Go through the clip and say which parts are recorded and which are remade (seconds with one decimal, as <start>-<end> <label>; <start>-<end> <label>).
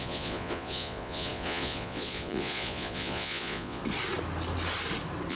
0.0-3.8 remade; 3.8-5.3 recorded